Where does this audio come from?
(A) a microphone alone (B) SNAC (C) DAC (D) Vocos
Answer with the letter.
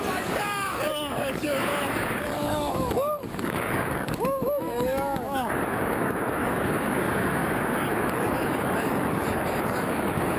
C